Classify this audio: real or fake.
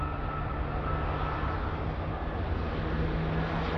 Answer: real